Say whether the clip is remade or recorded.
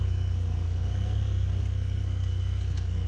remade